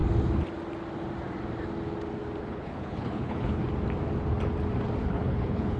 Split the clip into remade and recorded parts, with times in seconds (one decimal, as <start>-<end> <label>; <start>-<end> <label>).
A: 0.0-2.4 recorded; 2.4-3.6 remade; 3.6-5.0 recorded; 5.0-5.8 remade

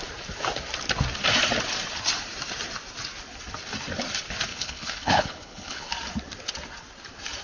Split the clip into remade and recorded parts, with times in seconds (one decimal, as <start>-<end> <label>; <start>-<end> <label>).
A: 0.0-4.5 recorded; 4.5-5.9 remade; 5.9-7.4 recorded

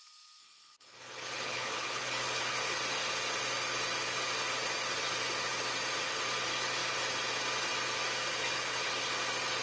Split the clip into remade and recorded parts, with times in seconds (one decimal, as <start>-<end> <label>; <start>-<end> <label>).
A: 0.0-0.4 recorded; 0.4-2.8 remade; 2.8-8.3 recorded; 8.3-8.9 remade; 8.9-9.6 recorded

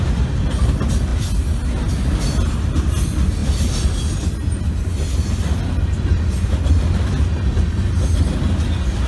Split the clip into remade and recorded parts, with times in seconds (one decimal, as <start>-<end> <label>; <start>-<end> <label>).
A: 0.0-9.1 recorded